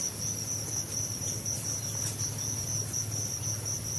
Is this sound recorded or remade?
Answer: recorded